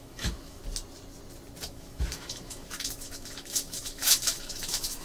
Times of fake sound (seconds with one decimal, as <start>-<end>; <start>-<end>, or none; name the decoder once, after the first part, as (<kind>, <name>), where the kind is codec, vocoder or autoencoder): 0.0-0.6 (autoencoder, DAC-VAE); 1.7-5.0